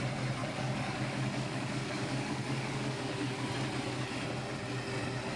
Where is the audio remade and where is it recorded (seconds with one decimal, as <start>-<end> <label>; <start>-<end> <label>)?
0.0-0.4 recorded; 0.4-3.5 remade; 3.5-5.4 recorded